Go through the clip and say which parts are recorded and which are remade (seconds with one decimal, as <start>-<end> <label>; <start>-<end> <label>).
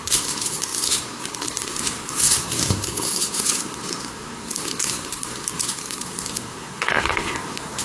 0.0-7.8 remade